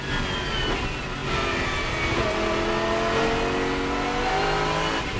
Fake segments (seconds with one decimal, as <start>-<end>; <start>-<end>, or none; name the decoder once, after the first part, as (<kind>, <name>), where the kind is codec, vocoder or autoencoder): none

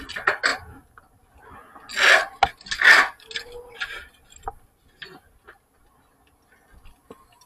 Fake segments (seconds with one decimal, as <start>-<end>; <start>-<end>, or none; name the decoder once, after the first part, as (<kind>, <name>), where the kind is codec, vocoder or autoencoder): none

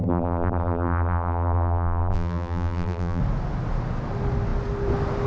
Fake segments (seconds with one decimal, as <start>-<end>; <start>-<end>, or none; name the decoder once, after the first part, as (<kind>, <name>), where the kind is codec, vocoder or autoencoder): 0.0-3.2 (vocoder, BigVGAN v2)

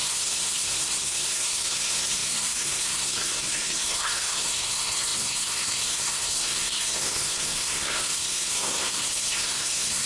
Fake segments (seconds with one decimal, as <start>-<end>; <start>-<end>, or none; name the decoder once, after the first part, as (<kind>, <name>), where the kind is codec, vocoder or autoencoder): 0.0-10.1 (codec, SNAC)

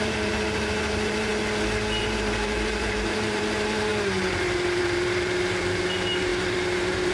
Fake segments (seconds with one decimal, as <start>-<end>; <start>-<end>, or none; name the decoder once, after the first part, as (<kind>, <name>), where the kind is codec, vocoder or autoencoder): 0.0-1.3 (vocoder, BigVGAN v2); 2.0-7.1

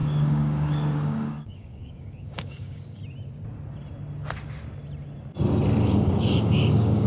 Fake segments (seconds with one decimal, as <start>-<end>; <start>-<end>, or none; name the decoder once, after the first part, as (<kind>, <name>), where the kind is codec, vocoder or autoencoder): 0.0-3.0 (codec, DAC); 5.8-7.1

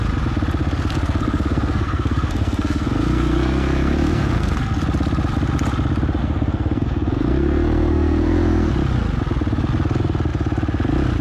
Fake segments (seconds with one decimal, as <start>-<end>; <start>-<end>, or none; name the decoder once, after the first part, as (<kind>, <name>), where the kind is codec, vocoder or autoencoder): 0.6-4.8 (codec, SNAC); 6.2-8.7